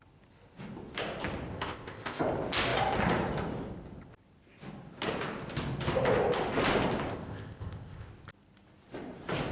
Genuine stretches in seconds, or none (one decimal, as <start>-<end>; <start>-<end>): 0.0-1.5; 2.2-7.1; 8.1-9.5